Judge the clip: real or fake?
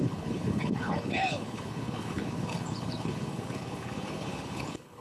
fake